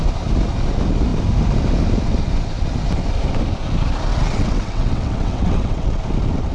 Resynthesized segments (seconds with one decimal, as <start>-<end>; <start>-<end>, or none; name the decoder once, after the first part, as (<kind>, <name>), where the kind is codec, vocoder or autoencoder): 4.1-6.0 (vocoder, WaveNeXt)